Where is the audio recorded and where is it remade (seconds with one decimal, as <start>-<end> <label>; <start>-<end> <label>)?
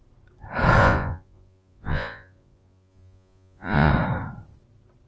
0.0-0.8 recorded; 0.8-3.9 remade; 3.9-5.1 recorded